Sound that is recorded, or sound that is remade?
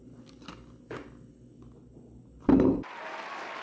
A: recorded